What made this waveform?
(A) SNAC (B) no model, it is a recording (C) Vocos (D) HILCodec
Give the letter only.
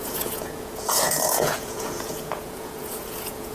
C